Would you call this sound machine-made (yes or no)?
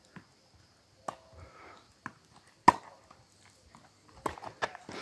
no